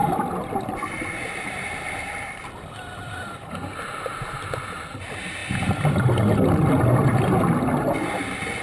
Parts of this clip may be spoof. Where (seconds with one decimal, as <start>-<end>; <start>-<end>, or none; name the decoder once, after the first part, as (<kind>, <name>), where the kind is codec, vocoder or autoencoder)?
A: 0.0-3.1 (vocoder, BigVGAN v2)